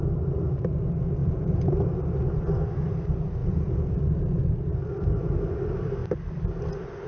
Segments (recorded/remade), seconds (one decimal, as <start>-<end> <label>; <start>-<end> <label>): 0.0-1.2 recorded; 1.2-1.8 remade; 1.8-3.4 recorded; 3.4-4.0 remade; 4.0-7.1 recorded

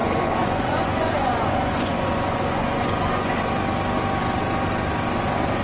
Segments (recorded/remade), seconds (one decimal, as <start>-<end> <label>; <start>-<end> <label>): 0.0-3.4 remade; 3.4-5.6 recorded

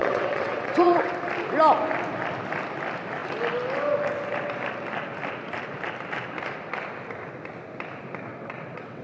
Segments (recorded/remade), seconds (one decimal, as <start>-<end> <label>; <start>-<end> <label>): 0.0-1.1 remade; 1.1-8.3 recorded; 8.3-9.0 remade